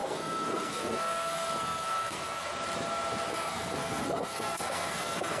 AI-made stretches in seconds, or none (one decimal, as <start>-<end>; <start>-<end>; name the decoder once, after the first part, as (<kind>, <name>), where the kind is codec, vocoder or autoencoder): 0.0-2.5 (codec, SNAC); 3.3-5.4